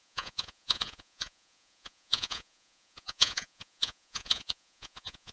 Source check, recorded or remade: remade